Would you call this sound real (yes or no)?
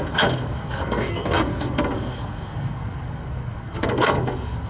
no